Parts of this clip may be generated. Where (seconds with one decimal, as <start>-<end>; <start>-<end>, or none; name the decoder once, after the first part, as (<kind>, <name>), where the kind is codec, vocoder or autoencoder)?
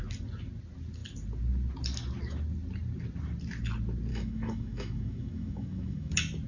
4.1-6.1 (autoencoder, DAC-VAE)